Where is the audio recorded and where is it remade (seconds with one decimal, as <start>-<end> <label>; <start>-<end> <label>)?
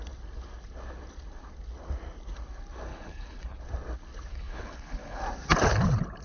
0.0-2.9 recorded; 2.9-3.6 remade; 3.6-4.3 recorded; 4.3-5.2 remade; 5.2-6.2 recorded